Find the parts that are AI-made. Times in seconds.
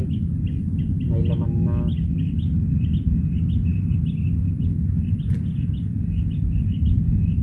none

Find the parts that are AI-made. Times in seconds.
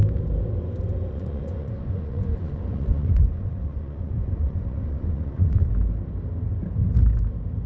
1.1-5.7 (vocoder, Vocos)